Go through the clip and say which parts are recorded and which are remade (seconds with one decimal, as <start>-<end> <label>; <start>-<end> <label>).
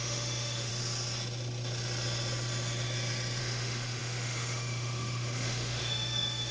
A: 0.0-0.7 remade; 0.7-3.4 recorded; 3.4-6.5 remade